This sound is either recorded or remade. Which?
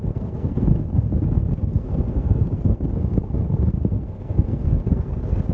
remade